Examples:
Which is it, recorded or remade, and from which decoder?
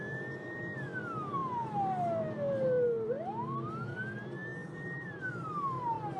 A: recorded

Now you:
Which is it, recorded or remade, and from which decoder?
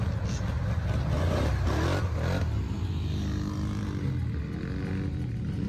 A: recorded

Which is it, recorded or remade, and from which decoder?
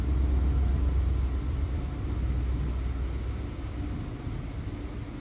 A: recorded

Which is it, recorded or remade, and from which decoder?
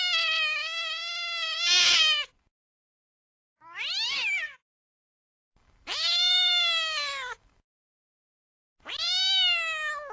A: recorded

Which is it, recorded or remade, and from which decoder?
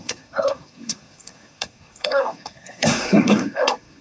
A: remade, codec, SNAC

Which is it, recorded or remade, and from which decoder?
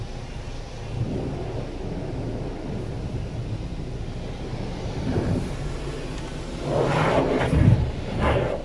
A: recorded